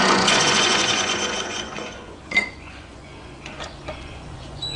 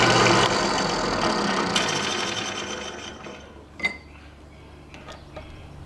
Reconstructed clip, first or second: first